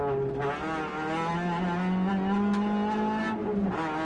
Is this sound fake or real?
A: real